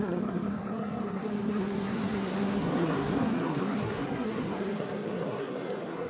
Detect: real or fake fake